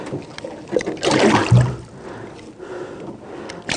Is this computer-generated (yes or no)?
no